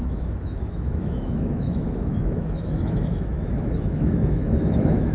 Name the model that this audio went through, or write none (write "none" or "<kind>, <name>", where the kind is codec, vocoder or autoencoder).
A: autoencoder, DAC-VAE